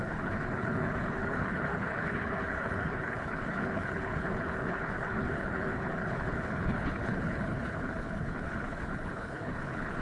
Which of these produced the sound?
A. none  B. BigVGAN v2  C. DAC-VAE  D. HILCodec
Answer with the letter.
D